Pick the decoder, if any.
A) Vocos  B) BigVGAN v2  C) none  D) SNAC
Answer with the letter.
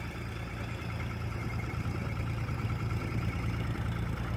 C